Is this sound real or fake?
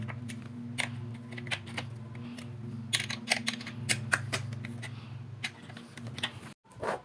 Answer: real